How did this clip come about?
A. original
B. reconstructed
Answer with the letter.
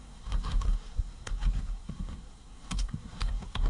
B